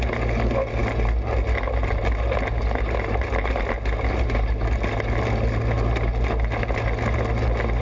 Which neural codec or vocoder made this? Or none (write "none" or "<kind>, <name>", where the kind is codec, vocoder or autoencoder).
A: none